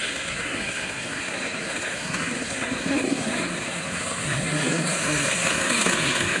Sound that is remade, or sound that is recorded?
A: remade